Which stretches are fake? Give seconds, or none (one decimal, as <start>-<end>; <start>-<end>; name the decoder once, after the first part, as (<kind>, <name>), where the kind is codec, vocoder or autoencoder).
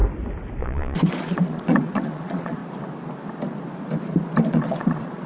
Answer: 0.6-2.6 (vocoder, Vocos); 4.5-5.3